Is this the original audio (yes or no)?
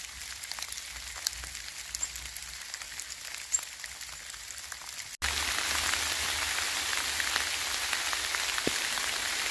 yes